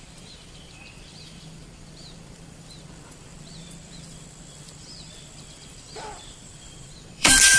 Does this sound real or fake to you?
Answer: fake